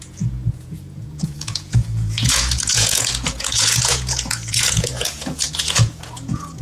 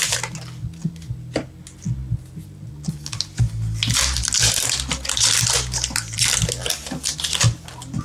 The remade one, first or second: first